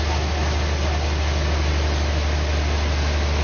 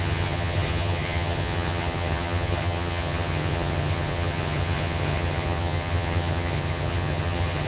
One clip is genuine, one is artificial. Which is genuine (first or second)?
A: first